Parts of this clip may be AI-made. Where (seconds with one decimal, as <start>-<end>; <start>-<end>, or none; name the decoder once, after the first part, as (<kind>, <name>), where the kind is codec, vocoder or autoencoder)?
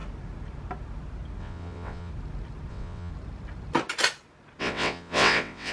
1.4-2.1 (vocoder, WaveNeXt); 2.7-3.1; 4.6-5.7